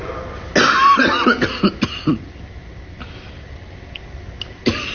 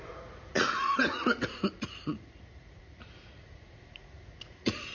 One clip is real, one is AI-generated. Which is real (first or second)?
first